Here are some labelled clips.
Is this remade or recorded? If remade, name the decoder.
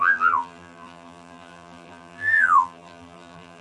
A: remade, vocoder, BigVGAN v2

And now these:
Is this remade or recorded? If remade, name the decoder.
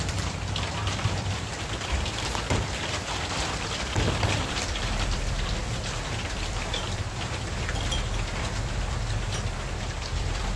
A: remade, vocoder, BigVGAN v2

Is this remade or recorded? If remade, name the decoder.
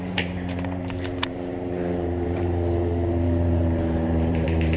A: remade, vocoder, BigVGAN v2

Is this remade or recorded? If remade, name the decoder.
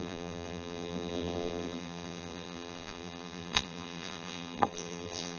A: remade, vocoder, BigVGAN v2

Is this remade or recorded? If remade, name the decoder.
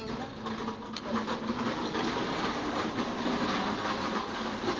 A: recorded